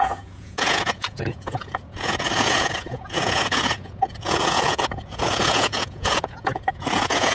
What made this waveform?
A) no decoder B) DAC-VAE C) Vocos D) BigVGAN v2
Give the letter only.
C